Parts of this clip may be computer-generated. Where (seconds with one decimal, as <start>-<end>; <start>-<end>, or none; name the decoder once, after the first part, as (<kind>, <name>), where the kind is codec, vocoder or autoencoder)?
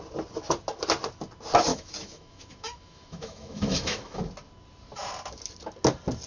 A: 1.7-4.2 (autoencoder, DAC-VAE)